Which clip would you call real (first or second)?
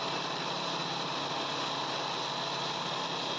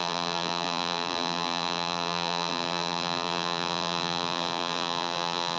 first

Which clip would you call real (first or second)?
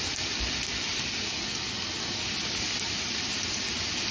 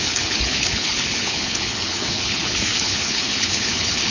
first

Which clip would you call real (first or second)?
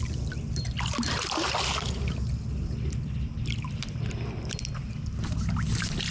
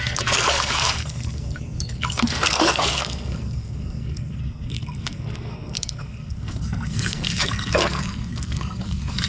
first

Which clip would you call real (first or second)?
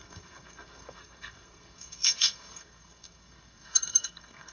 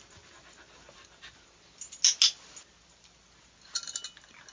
second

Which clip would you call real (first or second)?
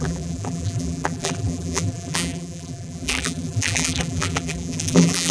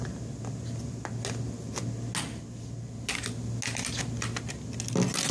second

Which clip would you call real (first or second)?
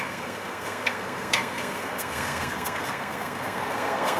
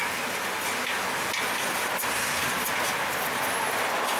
second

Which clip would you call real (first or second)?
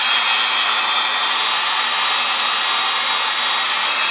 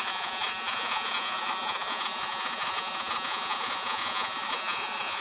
first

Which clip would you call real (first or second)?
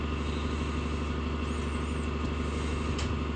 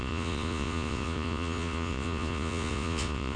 first